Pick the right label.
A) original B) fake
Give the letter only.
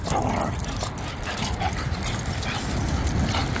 A